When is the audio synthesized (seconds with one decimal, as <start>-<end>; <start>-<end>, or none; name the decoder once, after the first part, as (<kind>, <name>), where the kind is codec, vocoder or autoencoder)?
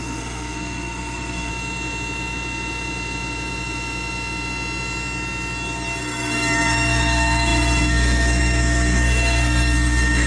0.0-1.5 (codec, SNAC); 6.0-10.3